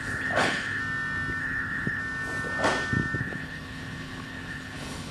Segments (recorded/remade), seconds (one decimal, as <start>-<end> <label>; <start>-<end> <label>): 0.0-0.8 remade; 0.8-1.4 recorded; 1.4-2.0 remade; 2.0-3.2 recorded; 3.2-5.1 remade